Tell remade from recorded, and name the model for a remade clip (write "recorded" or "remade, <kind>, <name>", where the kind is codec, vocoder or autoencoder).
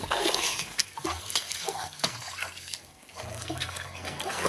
remade, codec, SNAC